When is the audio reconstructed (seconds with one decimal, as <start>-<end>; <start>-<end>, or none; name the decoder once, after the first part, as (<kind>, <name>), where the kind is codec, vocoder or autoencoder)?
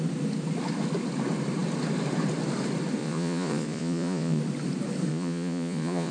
3.0-4.4 (vocoder, Vocos); 5.1-6.1